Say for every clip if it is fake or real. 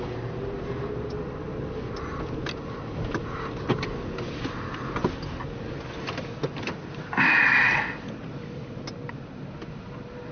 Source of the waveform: real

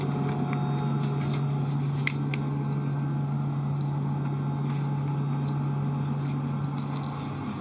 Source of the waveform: real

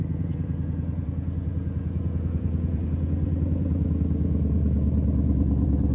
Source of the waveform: fake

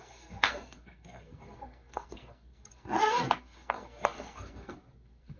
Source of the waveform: fake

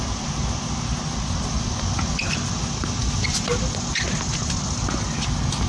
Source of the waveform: real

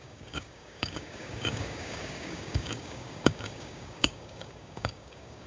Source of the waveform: fake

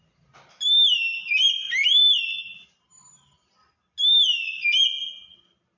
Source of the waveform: real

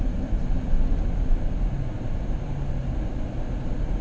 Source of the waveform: real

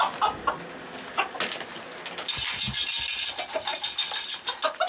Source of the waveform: real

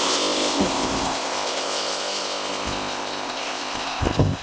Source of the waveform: fake